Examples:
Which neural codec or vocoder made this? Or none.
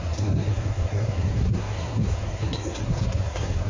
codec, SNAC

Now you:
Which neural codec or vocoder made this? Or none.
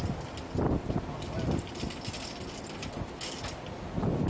none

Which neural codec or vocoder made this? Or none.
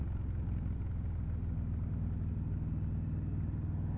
none